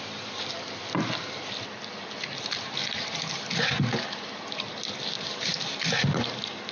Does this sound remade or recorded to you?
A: recorded